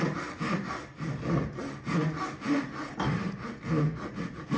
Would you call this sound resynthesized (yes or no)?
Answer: no